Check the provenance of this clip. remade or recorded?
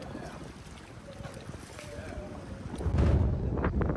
recorded